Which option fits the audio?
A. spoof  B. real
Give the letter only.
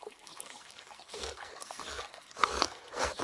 A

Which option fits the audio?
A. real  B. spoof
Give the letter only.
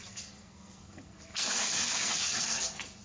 B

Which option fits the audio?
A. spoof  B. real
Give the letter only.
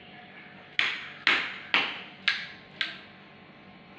B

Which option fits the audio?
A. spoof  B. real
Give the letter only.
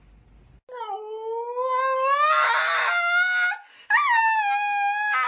B